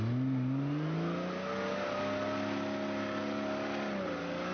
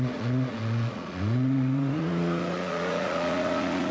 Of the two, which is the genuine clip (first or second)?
first